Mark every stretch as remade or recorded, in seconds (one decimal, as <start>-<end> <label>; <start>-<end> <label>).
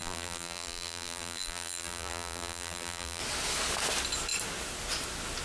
0.0-3.2 remade; 3.2-5.4 recorded